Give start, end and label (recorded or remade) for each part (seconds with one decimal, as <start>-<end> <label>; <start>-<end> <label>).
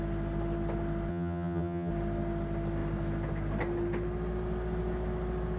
0.0-1.1 recorded; 1.1-1.9 remade; 1.9-5.6 recorded